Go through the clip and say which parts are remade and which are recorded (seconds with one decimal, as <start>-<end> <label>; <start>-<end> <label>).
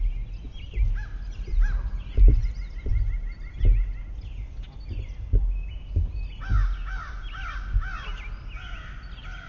0.0-9.5 recorded